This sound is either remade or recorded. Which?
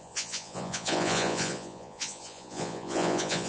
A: remade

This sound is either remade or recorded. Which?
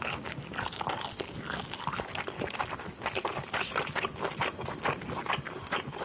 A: recorded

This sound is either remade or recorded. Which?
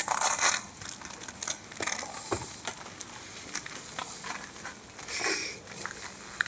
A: recorded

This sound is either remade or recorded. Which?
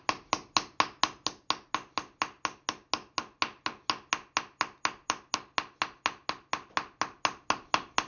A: recorded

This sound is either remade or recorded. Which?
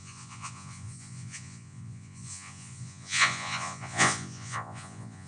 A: remade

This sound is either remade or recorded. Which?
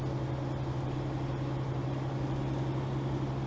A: recorded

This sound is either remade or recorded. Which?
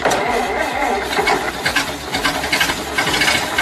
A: recorded